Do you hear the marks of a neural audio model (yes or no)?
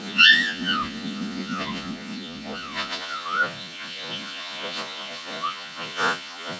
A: yes